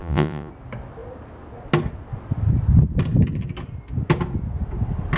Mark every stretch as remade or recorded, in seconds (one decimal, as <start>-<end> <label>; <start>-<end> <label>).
0.0-0.5 remade; 0.5-5.2 recorded